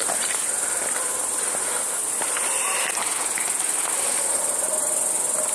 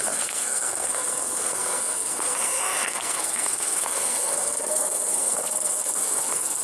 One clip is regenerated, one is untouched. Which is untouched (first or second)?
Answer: first